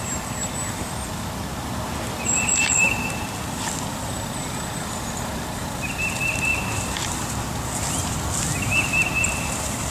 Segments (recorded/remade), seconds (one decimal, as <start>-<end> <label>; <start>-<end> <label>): 0.0-9.9 recorded

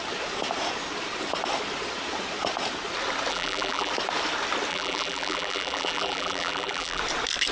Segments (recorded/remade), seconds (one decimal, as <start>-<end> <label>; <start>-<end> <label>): 0.0-3.3 recorded; 3.3-3.9 remade; 3.9-4.7 recorded; 4.7-7.0 remade; 7.0-7.5 recorded

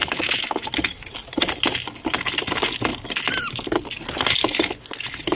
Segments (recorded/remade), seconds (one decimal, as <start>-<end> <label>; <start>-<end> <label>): 0.0-0.7 remade; 0.7-5.4 recorded

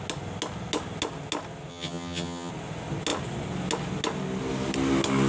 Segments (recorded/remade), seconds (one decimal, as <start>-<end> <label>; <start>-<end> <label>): 0.0-1.7 recorded; 1.7-2.5 remade; 2.5-5.3 recorded